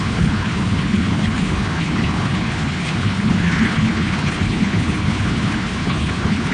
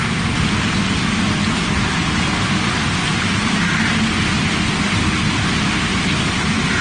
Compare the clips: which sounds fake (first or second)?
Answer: first